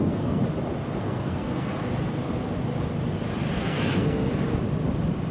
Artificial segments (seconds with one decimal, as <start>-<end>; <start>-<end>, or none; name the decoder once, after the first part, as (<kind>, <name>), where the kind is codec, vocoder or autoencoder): 0.0-0.4 (codec, SNAC); 1.0-1.7; 3.6-4.3